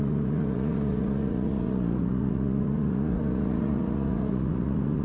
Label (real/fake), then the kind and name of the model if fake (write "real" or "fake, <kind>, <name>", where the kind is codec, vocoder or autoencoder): fake, vocoder, Vocos